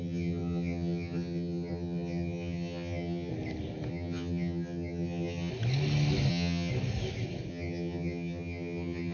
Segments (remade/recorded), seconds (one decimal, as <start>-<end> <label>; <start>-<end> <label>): 0.0-3.3 remade; 3.3-3.9 recorded; 3.9-5.5 remade; 5.5-6.3 recorded; 6.3-6.7 remade; 6.7-7.5 recorded; 7.5-9.1 remade